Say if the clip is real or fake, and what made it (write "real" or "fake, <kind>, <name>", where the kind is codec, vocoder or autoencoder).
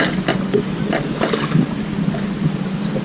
real